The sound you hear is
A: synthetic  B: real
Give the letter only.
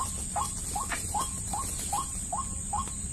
B